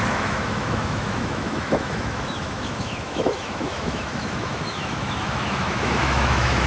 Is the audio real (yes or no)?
no